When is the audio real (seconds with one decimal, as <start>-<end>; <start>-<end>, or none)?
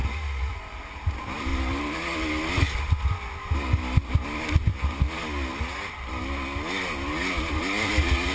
0.0-8.3